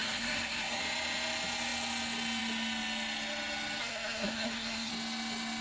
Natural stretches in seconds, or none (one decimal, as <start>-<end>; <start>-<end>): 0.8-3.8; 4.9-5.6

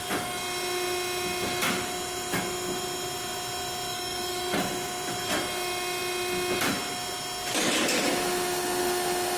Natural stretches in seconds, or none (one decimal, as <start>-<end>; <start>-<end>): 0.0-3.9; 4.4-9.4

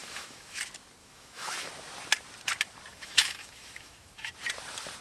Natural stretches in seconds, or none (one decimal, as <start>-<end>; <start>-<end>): 0.6-1.0; 1.7-2.9; 4.3-5.0

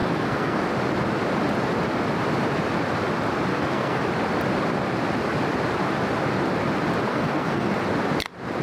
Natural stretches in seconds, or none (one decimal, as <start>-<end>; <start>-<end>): 0.6-3.5; 4.0-7.1; 7.7-8.6